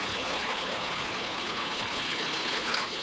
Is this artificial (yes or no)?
yes